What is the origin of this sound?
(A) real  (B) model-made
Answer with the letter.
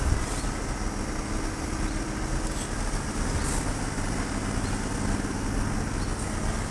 A